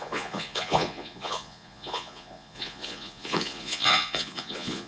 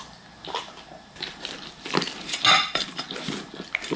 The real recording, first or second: second